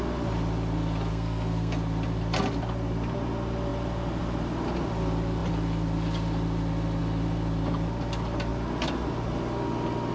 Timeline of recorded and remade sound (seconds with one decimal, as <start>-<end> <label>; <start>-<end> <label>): 0.0-1.1 recorded; 1.1-1.7 remade; 1.7-10.1 recorded